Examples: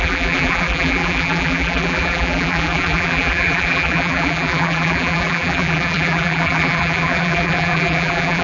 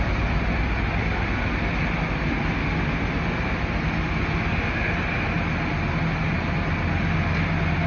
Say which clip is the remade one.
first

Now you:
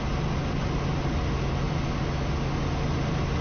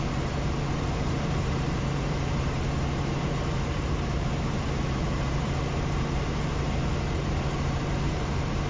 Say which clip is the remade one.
second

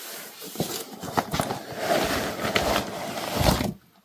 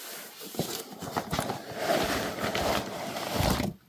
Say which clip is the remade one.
second